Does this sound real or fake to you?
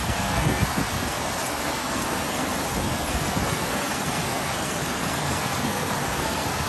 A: fake